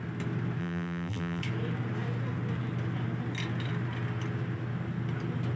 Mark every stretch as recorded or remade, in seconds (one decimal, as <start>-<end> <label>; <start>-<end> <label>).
0.0-0.6 recorded; 0.6-1.4 remade; 1.4-5.6 recorded